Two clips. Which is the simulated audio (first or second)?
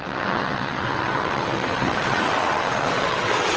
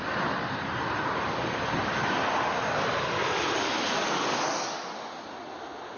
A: first